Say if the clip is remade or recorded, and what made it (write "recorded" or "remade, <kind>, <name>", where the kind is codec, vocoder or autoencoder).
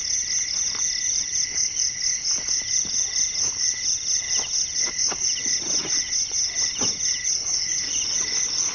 recorded